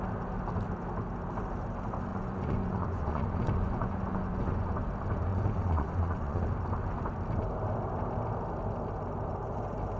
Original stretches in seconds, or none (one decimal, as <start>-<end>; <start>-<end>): 0.0-2.1; 4.7-5.3; 6.5-10.0